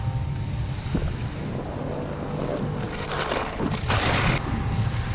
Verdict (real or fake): real